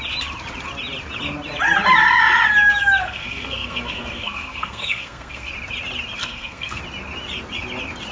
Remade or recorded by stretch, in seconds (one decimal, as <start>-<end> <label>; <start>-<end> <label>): 0.0-3.0 recorded; 3.0-5.5 remade; 5.5-6.2 recorded; 6.2-6.8 remade; 6.8-8.1 recorded